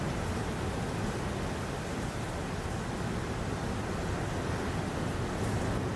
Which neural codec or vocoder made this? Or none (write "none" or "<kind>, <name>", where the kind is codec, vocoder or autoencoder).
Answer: none